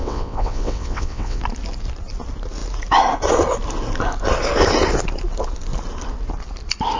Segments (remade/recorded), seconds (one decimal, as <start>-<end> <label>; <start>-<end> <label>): 0.0-1.4 remade; 1.4-7.0 recorded